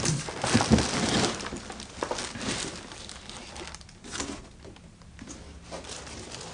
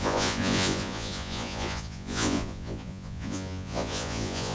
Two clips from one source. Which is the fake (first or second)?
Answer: second